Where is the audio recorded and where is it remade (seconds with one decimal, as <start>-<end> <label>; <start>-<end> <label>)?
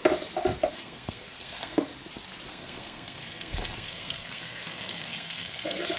0.0-0.7 recorded; 0.7-1.9 remade; 1.9-2.5 recorded; 2.5-6.0 remade